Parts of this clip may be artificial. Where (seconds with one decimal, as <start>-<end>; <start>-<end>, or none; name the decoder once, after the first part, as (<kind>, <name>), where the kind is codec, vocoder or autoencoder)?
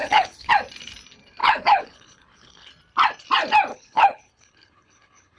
0.0-0.5 (codec, HILCodec); 1.4-2.7; 3.7-5.4